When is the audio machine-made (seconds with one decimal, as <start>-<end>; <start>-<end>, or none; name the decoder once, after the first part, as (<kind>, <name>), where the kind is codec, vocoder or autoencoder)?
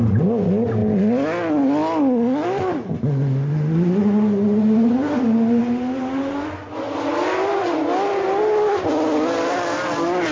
none